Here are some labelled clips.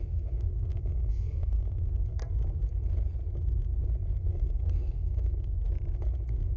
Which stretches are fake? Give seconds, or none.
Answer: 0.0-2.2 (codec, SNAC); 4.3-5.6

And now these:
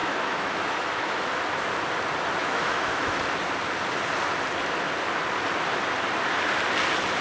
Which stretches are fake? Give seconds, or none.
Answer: 0.0-1.4 (autoencoder, DAC-VAE); 2.4-3.2